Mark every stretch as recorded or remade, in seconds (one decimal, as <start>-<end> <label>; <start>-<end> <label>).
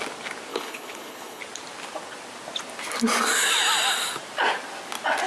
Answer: 0.0-0.5 recorded; 0.5-1.4 remade; 1.4-5.3 recorded